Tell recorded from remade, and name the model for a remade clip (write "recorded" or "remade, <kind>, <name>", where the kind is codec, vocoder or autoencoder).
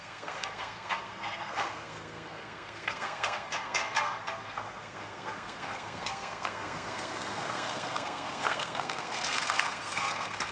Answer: remade, codec, SNAC